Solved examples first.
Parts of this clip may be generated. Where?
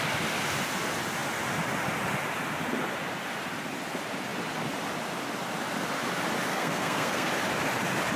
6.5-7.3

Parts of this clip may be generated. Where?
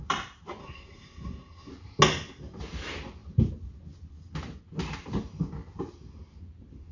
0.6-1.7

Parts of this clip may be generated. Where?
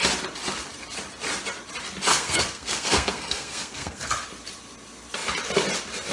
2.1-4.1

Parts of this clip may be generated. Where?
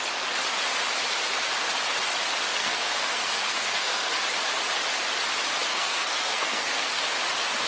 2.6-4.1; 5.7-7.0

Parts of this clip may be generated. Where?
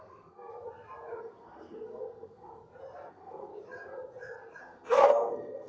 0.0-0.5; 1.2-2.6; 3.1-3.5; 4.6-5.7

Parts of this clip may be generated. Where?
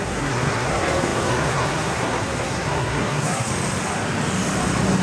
0.0-3.5